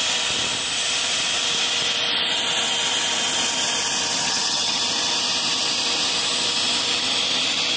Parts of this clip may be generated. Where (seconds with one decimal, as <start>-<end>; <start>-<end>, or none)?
4.2-4.8